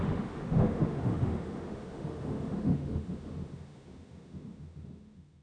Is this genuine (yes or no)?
no